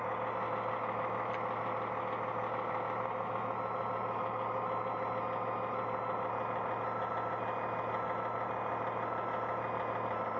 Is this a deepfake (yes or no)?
no